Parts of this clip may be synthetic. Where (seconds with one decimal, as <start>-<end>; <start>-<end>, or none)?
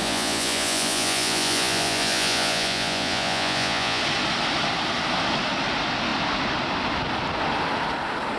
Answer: 0.0-4.0